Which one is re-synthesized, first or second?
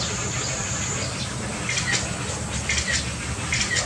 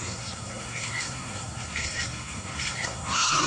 second